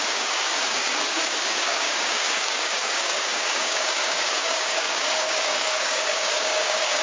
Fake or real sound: fake